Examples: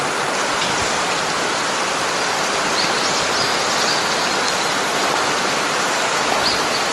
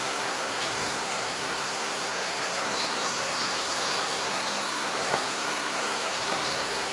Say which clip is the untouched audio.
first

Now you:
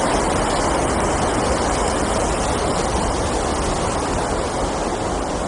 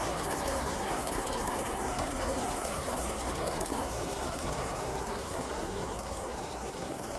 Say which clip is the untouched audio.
first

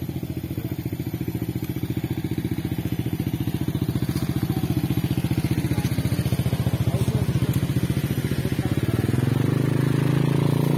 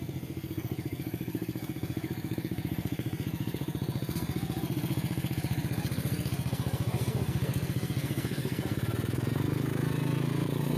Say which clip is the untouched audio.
first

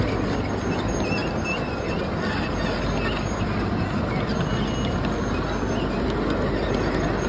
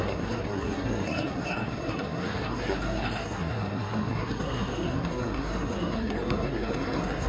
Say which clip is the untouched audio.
first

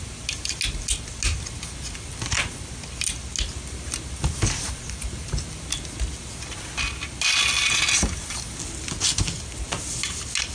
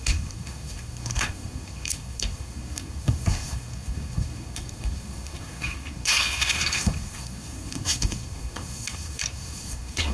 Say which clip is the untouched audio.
first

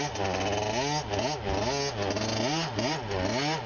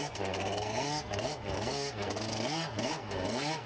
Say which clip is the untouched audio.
first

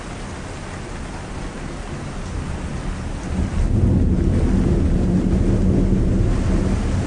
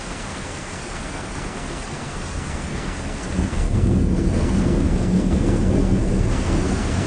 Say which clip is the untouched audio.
first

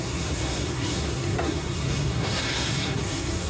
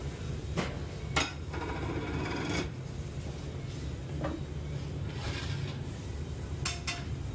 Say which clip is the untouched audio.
second